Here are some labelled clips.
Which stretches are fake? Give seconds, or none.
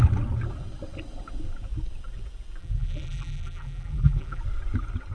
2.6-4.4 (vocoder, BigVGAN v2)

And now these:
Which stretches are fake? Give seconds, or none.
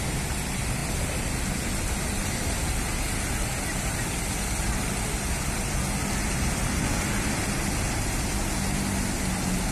0.8-1.4 (vocoder, BigVGAN v2)